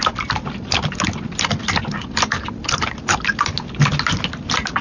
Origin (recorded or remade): recorded